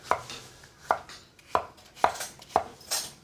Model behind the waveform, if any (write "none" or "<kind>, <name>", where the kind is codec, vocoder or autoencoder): none